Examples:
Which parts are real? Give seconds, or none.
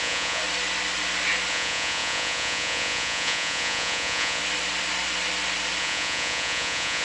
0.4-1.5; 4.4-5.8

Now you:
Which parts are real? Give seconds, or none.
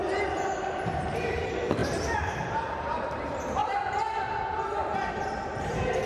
0.0-0.6; 1.8-2.4; 3.6-5.2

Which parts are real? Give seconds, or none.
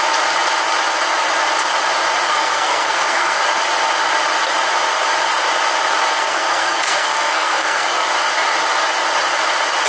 0.0-2.3; 3.4-6.2; 8.1-9.9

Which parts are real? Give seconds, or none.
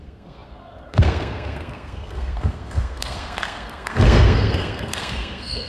none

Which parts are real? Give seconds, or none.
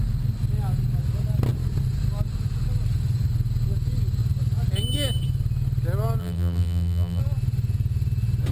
0.0-6.2; 7.2-8.5